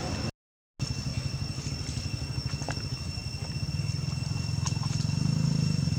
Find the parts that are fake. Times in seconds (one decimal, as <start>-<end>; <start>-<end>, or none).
none